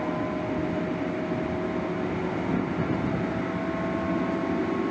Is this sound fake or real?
real